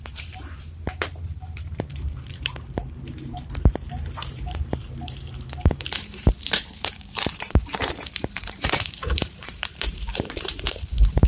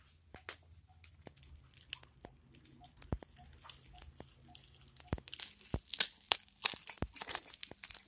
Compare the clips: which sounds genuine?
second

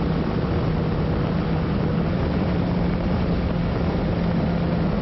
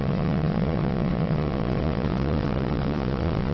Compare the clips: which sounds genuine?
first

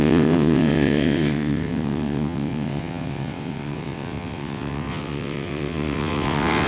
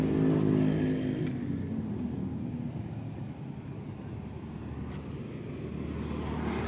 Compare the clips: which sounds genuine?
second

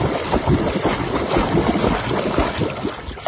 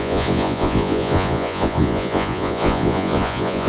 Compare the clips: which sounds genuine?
first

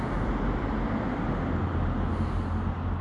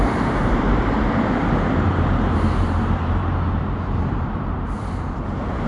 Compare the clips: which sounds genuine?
first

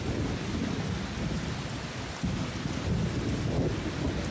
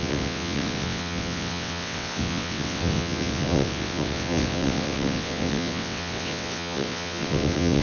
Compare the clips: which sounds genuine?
first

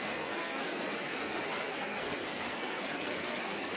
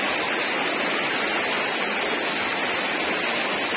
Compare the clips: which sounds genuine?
second